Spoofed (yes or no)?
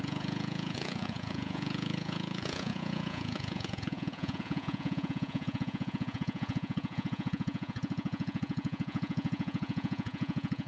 yes